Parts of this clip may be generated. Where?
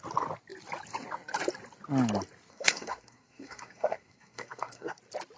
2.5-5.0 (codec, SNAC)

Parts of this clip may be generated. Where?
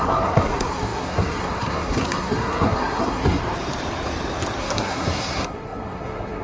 0.0-3.4 (codec, SNAC); 4.6-6.4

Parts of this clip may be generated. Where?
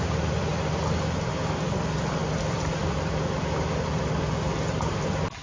2.2-5.4 (vocoder, BigVGAN v2)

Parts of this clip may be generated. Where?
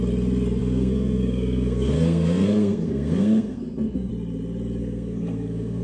0.6-4.1 (codec, SNAC); 4.8-5.8